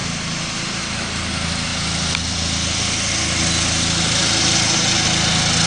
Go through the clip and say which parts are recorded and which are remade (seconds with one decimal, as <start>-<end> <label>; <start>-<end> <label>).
0.0-0.8 remade; 0.8-5.7 recorded